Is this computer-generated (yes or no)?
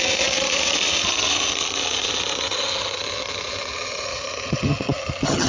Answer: yes